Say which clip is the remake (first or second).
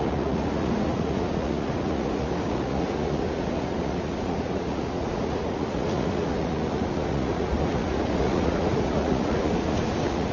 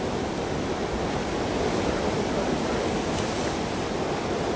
first